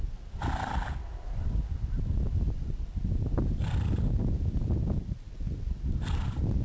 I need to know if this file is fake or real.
real